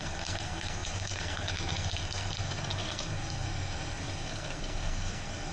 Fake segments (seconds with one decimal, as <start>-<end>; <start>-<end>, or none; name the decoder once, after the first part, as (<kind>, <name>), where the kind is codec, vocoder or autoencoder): 0.0-5.5 (codec, SNAC)